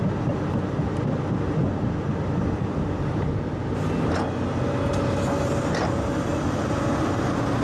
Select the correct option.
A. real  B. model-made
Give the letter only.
A